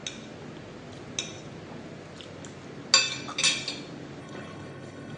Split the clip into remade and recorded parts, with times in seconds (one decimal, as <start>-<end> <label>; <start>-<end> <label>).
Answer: 0.0-4.2 recorded; 4.2-5.2 remade